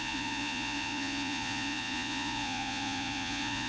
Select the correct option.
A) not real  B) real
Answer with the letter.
A